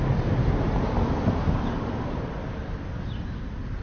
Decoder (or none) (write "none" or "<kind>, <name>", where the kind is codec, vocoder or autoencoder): none